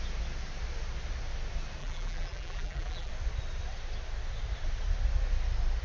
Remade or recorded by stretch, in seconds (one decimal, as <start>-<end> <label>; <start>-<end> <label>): 0.0-1.8 recorded; 1.8-3.1 remade; 3.1-5.8 recorded